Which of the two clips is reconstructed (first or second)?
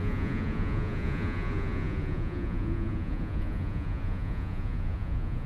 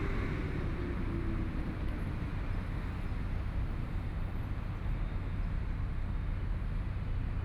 first